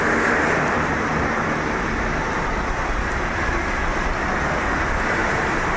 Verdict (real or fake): fake